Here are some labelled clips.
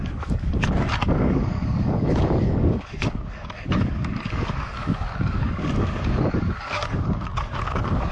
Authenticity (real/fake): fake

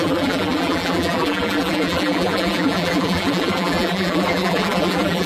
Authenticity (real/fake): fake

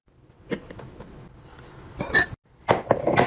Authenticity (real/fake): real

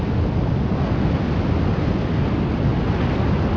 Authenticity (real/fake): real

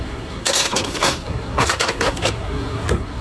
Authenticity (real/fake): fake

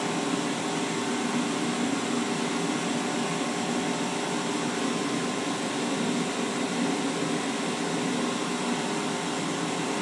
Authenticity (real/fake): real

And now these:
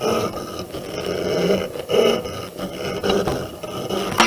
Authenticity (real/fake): real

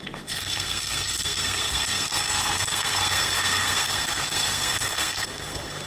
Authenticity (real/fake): fake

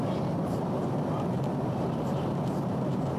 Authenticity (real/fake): fake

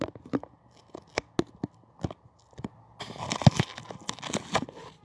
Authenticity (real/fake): real